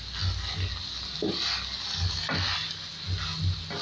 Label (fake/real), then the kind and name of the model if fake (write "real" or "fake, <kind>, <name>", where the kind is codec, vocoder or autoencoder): real